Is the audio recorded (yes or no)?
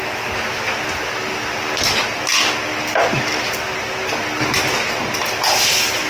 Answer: yes